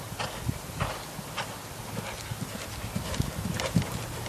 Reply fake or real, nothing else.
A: real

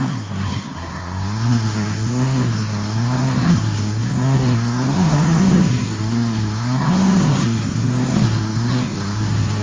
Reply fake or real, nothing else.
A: fake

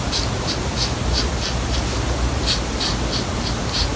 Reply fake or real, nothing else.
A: real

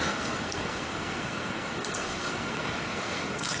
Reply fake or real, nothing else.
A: fake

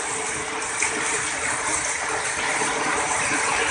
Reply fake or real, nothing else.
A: real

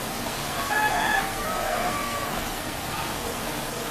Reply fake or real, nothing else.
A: fake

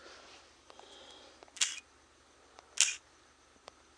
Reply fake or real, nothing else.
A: real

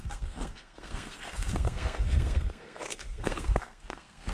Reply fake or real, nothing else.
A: fake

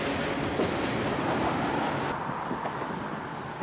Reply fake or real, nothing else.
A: real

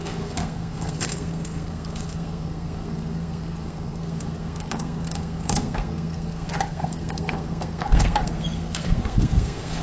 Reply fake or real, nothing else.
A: fake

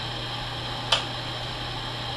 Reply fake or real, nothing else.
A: real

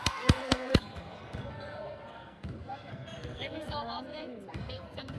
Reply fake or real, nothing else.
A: fake